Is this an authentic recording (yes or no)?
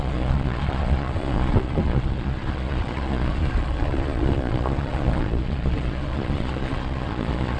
no